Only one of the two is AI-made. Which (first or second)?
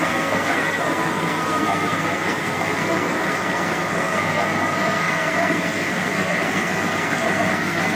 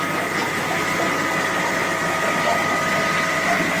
first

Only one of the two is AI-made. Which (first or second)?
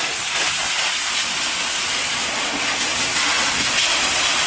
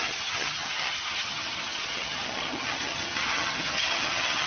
second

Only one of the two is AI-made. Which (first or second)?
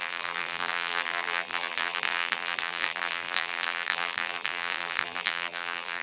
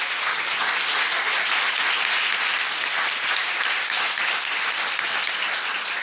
first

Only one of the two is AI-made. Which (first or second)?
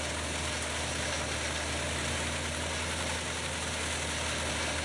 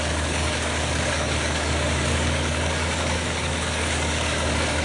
second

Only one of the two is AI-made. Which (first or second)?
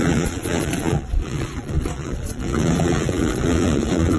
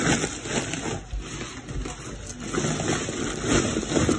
first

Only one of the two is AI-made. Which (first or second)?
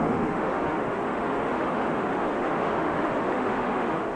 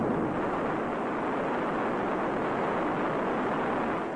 first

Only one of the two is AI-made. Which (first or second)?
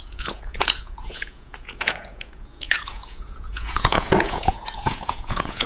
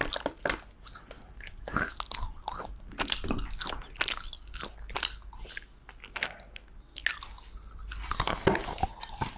first